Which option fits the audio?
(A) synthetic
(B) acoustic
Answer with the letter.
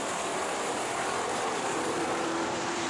A